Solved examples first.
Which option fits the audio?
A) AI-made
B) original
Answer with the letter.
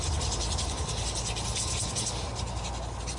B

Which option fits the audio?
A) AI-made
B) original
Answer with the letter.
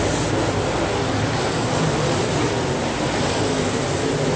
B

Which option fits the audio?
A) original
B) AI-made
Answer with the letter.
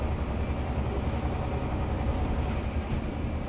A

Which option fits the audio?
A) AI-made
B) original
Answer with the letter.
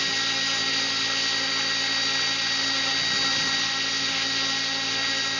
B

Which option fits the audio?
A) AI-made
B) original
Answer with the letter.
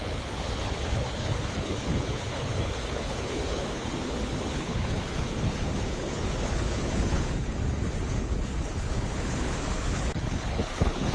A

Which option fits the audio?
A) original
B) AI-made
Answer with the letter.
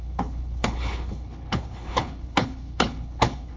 B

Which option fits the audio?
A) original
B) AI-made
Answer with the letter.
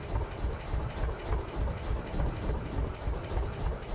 A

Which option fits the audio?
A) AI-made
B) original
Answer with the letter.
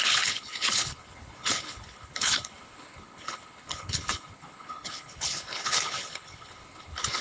A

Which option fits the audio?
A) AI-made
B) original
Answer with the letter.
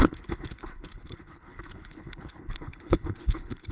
A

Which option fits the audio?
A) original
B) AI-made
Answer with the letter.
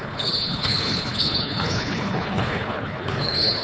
B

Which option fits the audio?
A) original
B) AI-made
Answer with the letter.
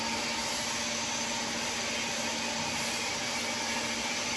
A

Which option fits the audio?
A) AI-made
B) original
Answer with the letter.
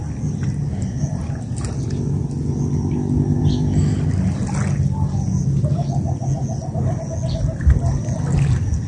B